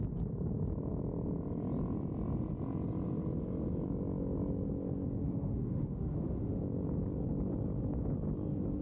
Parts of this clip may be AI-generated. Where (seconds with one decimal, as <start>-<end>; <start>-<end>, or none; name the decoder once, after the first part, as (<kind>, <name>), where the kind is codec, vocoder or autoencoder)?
5.2-6.6 (autoencoder, DAC-VAE)